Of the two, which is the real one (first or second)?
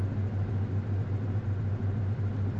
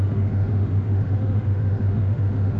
first